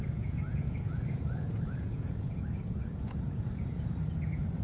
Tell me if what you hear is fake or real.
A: fake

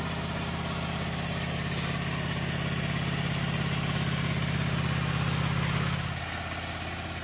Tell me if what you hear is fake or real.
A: real